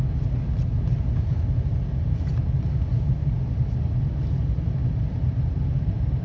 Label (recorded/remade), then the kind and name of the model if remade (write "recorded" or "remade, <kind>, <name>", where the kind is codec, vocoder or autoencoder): recorded